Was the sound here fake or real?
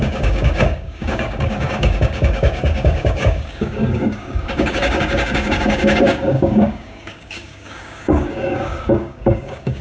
fake